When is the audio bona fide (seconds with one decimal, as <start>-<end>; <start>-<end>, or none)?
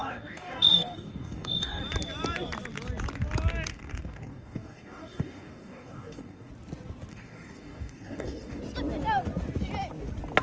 1.8-3.7; 6.5-7.1; 8.6-10.4